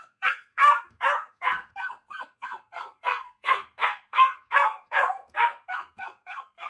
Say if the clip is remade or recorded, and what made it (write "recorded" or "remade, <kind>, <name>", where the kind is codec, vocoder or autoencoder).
remade, codec, SNAC